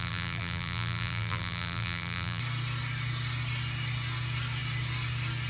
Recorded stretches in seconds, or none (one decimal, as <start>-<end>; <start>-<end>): 2.4-5.5